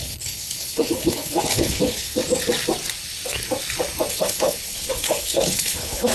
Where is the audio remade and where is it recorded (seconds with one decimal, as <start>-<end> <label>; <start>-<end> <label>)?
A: 0.0-2.2 remade; 2.2-4.1 recorded; 4.1-6.1 remade